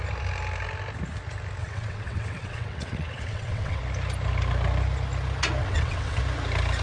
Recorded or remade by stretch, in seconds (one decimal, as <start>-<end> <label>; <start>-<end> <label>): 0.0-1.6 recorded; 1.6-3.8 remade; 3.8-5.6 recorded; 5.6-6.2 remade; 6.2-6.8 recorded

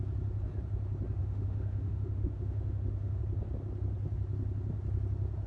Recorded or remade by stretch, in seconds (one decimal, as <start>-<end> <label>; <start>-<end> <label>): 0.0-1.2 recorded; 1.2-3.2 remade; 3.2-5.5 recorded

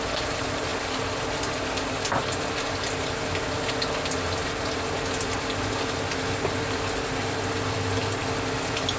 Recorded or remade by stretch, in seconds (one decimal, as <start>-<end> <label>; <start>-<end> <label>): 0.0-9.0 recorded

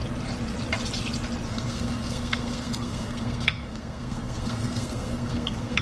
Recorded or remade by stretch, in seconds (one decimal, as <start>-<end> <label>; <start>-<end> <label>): 0.0-1.5 recorded; 1.5-5.8 remade

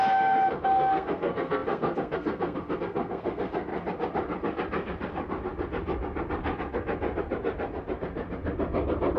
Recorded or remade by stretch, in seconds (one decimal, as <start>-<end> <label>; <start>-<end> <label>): 0.0-3.7 remade; 3.7-9.2 recorded

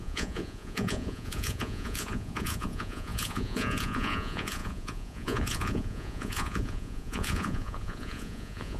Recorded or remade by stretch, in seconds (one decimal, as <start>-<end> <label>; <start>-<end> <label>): 0.0-8.8 remade